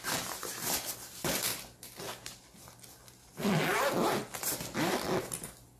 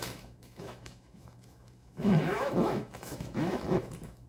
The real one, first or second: first